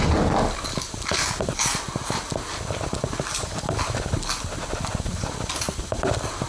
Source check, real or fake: real